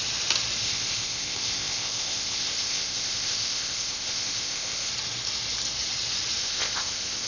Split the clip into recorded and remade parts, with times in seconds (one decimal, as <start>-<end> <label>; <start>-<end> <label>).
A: 0.0-0.6 recorded; 0.6-4.9 remade; 4.9-6.4 recorded; 6.4-7.3 remade